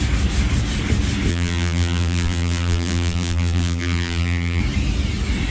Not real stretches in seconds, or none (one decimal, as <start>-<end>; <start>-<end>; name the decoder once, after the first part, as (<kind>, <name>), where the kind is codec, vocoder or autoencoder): 1.3-4.6 (vocoder, BigVGAN v2)